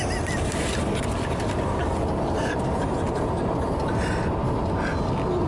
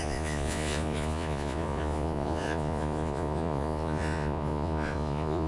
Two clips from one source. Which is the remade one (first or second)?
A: second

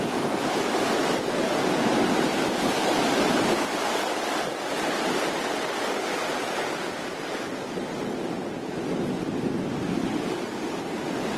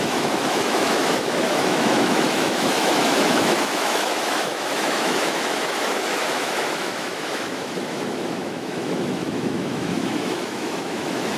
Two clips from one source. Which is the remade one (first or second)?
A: second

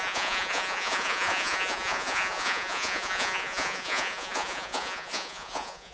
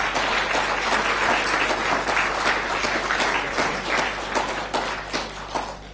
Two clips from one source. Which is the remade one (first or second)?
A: first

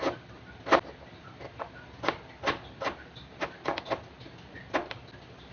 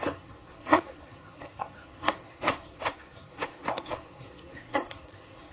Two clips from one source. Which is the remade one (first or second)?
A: second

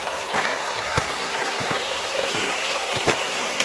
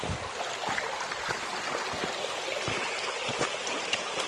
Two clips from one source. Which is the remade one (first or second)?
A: first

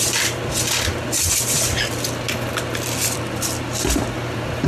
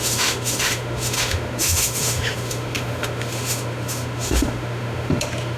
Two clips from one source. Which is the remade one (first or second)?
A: second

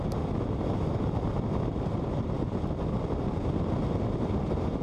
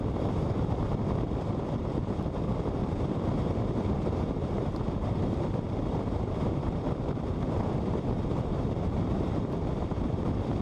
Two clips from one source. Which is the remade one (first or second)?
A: second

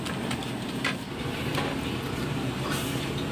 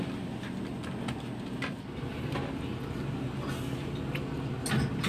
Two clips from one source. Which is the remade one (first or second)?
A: first